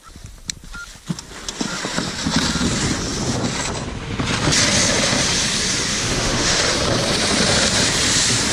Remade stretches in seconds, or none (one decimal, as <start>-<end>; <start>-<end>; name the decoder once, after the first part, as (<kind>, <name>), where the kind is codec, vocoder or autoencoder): 5.9-6.6 (autoencoder, DAC-VAE)